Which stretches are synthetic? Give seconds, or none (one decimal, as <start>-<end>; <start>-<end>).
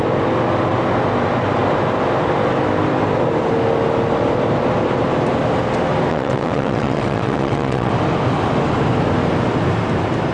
6.1-7.9